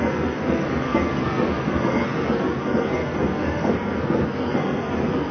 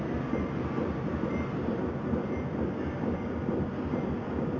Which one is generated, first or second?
first